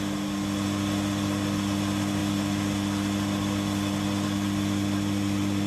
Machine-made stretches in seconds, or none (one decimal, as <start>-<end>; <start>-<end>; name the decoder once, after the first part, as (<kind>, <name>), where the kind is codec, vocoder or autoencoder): none